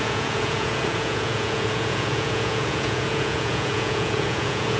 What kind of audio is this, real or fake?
fake